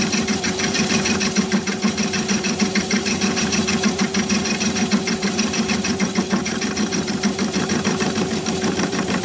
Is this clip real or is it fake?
fake